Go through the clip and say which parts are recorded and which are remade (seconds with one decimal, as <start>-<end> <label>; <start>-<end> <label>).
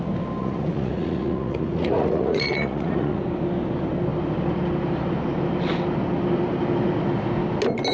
0.0-0.4 recorded; 0.4-3.2 remade; 3.2-7.9 recorded